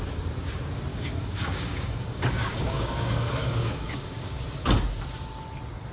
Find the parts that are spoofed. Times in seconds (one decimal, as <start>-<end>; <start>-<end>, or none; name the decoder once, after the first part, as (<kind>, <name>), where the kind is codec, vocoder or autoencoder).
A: 0.9-4.4 (codec, DAC)